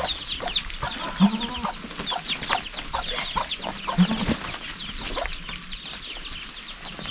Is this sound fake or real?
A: real